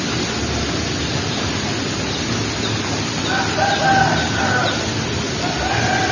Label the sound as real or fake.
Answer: real